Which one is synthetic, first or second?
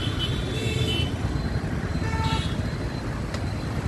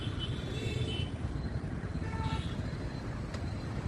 second